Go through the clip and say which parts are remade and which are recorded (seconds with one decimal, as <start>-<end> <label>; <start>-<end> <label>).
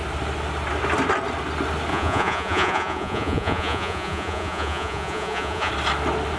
0.0-1.9 recorded; 1.9-5.7 remade; 5.7-6.4 recorded